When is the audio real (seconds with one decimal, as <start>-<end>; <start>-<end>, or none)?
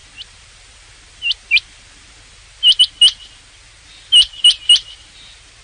0.0-5.6